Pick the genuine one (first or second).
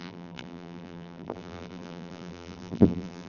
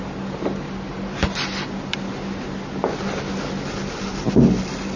second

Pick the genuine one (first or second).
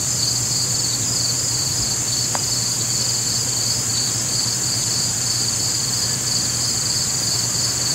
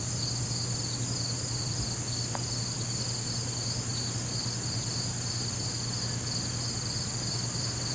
second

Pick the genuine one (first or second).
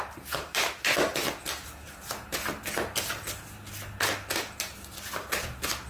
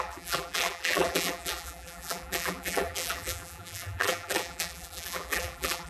first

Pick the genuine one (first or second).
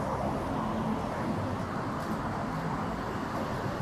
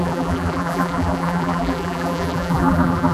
first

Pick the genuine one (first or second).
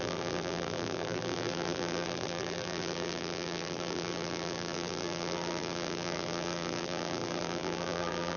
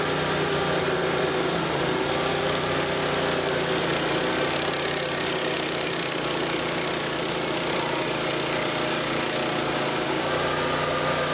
second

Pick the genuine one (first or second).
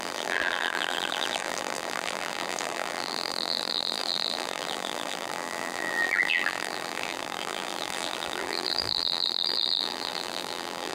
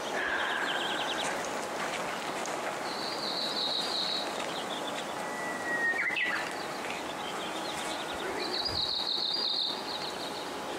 second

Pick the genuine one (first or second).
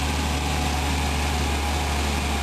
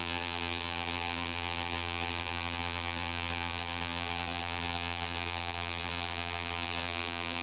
first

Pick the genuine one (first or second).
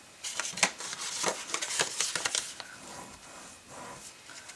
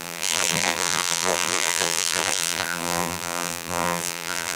first